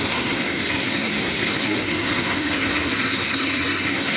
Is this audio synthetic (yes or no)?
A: yes